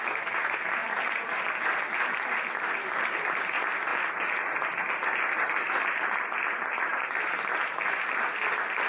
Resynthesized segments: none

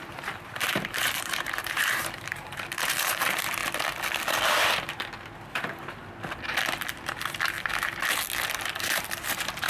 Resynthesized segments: 0.0-3.6; 5.5-6.0; 8.6-9.7

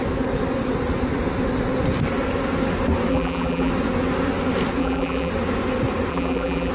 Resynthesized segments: 3.1-3.7; 4.8-5.3; 6.1-6.7

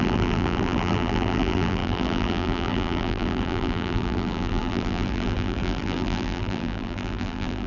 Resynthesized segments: 0.0-7.7

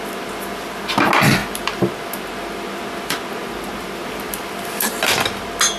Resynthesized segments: 1.4-2.3; 3.4-4.7

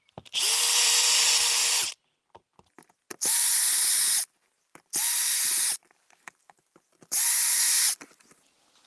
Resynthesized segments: none